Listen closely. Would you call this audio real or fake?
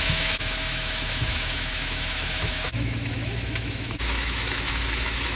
fake